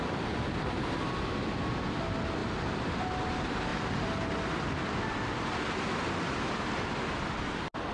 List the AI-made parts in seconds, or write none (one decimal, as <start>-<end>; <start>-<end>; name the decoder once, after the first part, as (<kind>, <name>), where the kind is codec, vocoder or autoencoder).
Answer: none